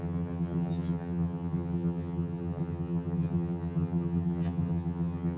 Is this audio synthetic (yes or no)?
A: yes